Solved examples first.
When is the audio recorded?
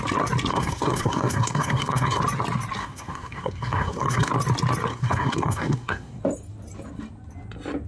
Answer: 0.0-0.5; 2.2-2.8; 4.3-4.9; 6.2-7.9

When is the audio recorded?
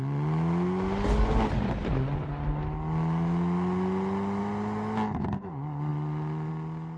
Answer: 0.0-7.0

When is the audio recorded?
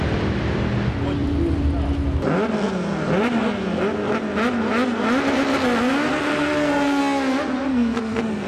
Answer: 0.0-6.3; 7.0-7.7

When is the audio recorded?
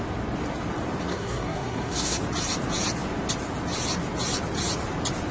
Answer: 0.0-1.1; 2.2-5.3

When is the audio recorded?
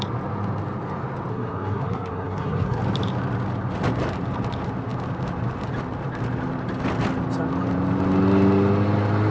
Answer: 0.0-1.3; 2.8-9.3